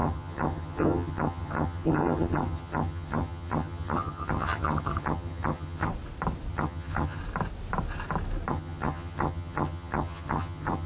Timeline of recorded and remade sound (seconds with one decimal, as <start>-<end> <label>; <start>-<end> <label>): 0.0-5.9 remade; 5.9-6.5 recorded; 6.5-7.2 remade; 7.2-8.5 recorded; 8.5-10.9 remade